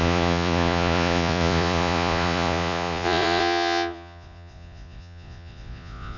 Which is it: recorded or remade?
remade